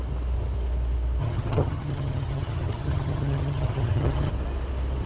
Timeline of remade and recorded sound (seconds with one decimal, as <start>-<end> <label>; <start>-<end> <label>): 0.0-1.2 recorded; 1.2-4.3 remade; 4.3-5.1 recorded